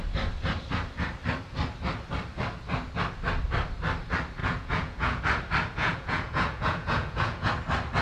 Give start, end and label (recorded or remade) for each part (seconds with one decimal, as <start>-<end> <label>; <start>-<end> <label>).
0.0-4.4 recorded; 4.4-5.2 remade; 5.2-5.8 recorded; 5.8-7.5 remade; 7.5-8.0 recorded